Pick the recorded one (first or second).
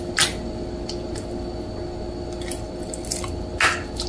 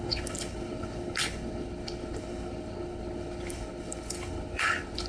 first